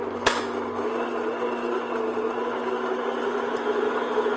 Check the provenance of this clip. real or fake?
real